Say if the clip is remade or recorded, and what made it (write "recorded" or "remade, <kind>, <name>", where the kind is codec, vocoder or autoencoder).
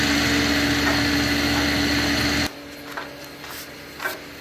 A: recorded